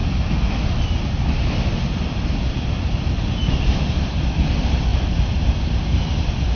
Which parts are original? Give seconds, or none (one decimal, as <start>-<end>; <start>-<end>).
0.0-3.5